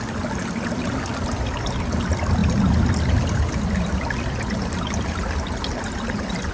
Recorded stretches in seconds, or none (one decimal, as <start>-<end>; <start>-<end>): 0.0-6.5